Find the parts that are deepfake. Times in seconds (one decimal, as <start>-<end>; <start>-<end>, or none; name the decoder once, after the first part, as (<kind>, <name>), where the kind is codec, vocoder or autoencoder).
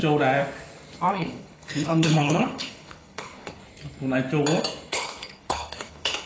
1.1-3.6 (codec, HILCodec); 4.9-6.3